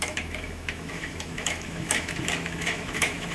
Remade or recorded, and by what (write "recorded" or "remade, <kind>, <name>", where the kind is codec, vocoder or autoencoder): remade, autoencoder, DAC-VAE